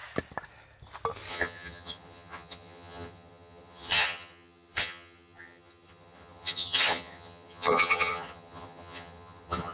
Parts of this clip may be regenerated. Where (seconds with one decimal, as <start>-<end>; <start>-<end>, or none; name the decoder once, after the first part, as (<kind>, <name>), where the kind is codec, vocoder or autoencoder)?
1.3-9.7 (vocoder, HiFi-GAN)